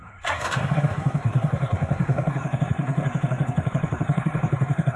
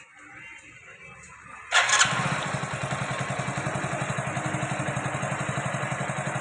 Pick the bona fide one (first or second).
second